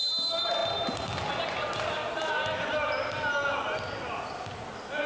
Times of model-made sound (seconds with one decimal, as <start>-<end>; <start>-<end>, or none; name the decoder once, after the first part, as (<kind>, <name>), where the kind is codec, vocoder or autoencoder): none